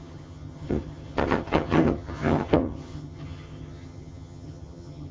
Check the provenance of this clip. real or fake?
fake